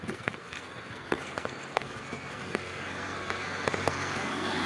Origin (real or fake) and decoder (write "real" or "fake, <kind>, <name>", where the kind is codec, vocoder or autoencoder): fake, codec, SNAC